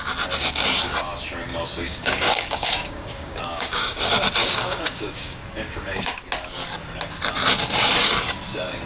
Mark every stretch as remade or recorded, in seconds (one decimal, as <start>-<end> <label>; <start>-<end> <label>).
0.0-1.8 recorded; 1.8-4.0 remade; 4.0-4.4 recorded; 4.4-6.1 remade; 6.1-8.9 recorded